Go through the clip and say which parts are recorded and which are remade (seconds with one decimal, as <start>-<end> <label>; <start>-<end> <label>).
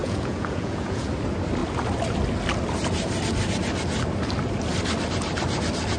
0.0-1.1 remade; 1.1-6.0 recorded